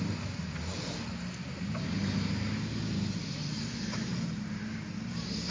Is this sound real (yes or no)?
yes